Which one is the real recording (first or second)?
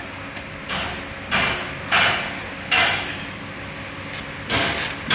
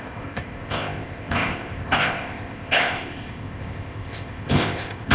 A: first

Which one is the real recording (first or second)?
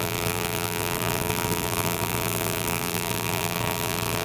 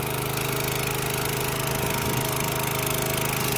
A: second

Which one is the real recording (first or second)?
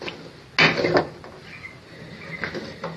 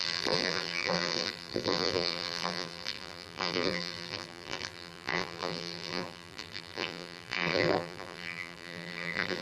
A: first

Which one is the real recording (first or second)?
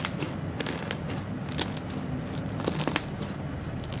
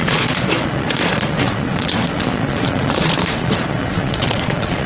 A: first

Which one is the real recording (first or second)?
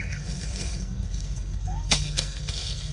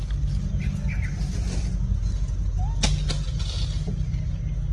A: second